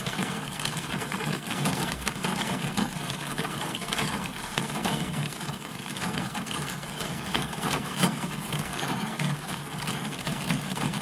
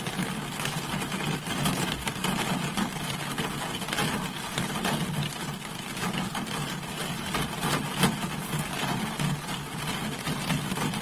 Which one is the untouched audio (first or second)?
second